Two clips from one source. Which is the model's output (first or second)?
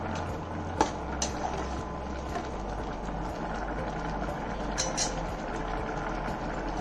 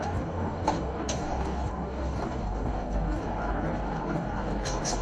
second